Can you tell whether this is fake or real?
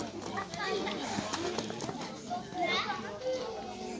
real